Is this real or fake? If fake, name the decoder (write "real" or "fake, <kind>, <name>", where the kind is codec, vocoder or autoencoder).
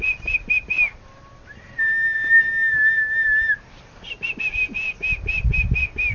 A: real